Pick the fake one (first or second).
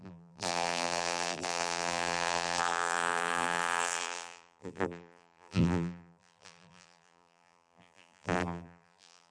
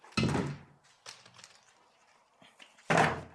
first